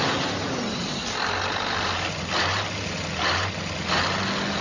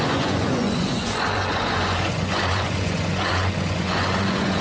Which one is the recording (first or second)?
first